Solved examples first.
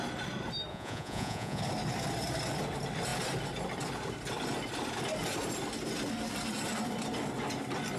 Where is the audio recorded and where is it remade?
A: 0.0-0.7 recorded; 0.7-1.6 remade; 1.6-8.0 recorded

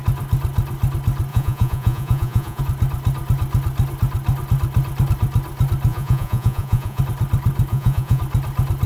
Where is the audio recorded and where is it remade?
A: 0.0-1.3 recorded; 1.3-2.6 remade; 2.6-5.9 recorded; 5.9-7.0 remade; 7.0-7.7 recorded; 7.7-8.2 remade; 8.2-8.9 recorded

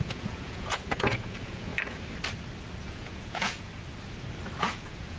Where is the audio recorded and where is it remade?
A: 0.0-1.7 remade; 1.7-2.8 recorded; 2.8-3.7 remade; 3.7-4.6 recorded; 4.6-5.2 remade

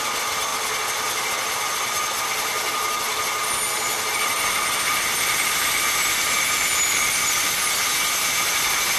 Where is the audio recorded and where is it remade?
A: 0.0-9.0 recorded